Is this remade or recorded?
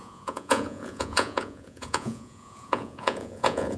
remade